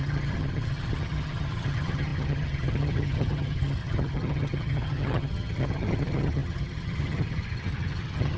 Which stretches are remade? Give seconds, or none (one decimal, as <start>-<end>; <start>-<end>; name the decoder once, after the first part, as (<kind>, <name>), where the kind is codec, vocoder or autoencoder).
0.0-8.4 (vocoder, HiFi-GAN)